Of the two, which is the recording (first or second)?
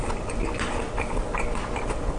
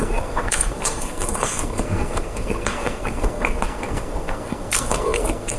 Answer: first